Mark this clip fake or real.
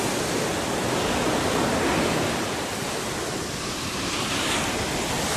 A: real